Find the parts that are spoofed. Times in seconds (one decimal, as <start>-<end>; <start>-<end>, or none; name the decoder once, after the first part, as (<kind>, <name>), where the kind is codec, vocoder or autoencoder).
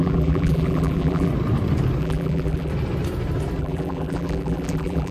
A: 0.0-1.3 (vocoder, BigVGAN v2); 2.0-2.7; 3.6-5.1